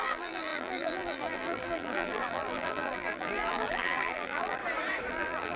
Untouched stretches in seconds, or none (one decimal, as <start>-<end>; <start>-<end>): 4.6-5.1